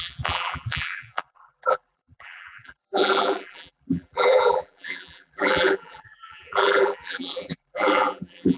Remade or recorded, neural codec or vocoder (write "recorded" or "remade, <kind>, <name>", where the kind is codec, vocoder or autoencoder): remade, vocoder, BigVGAN v2